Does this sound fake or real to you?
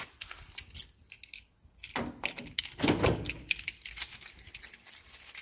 real